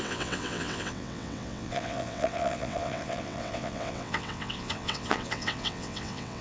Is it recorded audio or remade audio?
remade